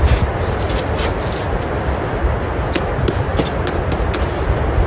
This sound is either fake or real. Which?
real